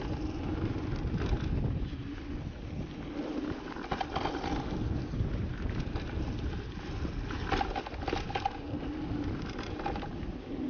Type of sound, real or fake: real